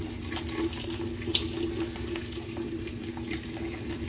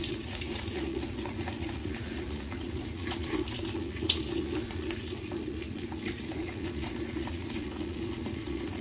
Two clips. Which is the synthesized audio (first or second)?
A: second